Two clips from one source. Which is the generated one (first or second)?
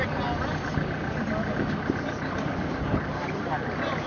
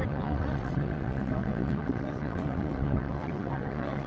second